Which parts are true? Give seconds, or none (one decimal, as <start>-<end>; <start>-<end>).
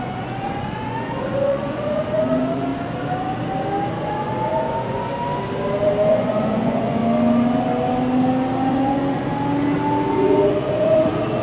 2.7-4.0; 5.1-6.1; 7.0-8.7; 9.3-10.1